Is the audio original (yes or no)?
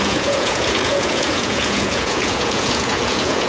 no